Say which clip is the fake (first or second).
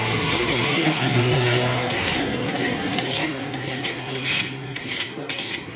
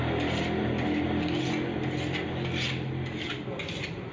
first